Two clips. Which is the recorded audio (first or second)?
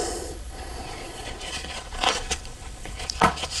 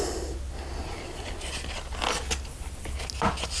second